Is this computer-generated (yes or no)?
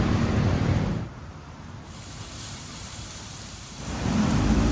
yes